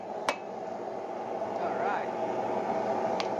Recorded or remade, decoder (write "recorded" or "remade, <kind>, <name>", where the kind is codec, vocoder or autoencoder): recorded